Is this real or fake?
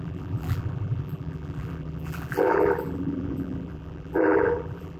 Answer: fake